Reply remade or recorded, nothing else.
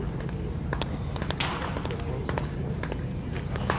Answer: recorded